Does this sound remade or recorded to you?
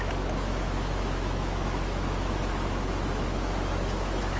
remade